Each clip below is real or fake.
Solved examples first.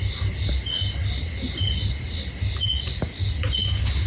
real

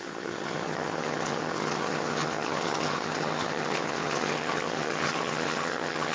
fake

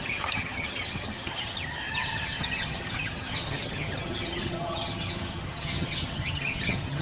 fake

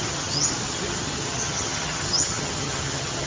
fake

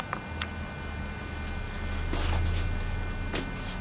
real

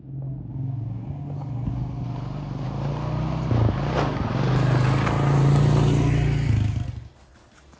real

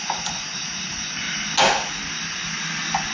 real